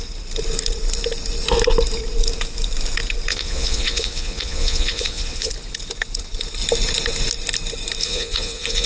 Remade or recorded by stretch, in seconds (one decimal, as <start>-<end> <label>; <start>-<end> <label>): 0.0-3.3 recorded; 3.3-5.5 remade; 5.5-8.0 recorded; 8.0-8.9 remade